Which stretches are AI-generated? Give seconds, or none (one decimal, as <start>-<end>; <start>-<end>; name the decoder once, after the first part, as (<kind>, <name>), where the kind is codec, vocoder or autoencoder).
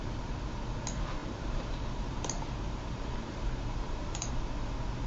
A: 1.2-4.3 (vocoder, BigVGAN v2)